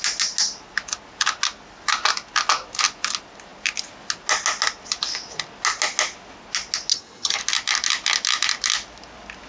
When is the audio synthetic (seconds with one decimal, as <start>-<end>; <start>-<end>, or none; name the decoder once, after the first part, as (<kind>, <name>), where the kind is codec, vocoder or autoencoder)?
6.9-7.4 (vocoder, HiFi-GAN)